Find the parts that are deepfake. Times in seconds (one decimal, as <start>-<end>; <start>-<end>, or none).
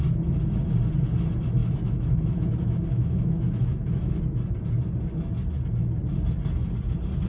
1.6-4.2